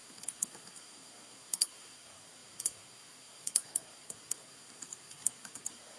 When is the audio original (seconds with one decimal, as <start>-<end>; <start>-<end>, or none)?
none